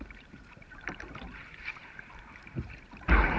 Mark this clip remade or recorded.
remade